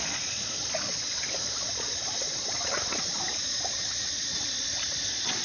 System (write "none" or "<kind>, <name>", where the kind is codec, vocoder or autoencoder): vocoder, Vocos